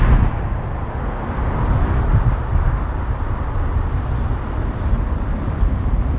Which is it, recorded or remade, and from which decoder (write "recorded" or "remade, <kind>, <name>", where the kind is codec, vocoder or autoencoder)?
recorded